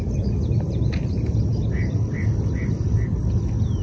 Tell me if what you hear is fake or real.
real